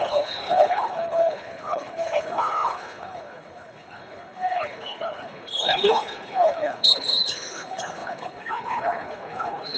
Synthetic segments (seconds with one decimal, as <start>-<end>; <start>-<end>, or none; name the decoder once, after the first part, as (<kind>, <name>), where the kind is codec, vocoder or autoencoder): 0.0-9.8 (codec, HILCodec)